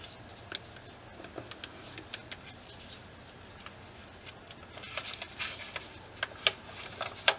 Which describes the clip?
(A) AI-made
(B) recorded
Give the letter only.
B